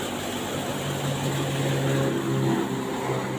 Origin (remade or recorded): recorded